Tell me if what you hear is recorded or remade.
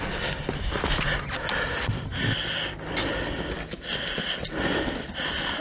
recorded